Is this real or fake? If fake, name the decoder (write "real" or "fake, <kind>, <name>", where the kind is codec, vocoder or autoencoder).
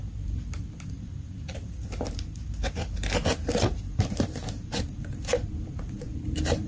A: fake, vocoder, BigVGAN v2